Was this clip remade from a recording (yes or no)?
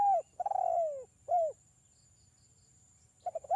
no